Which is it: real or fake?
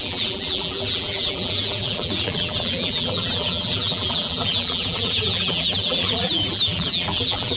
fake